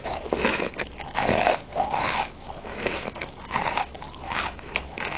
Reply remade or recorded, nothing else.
remade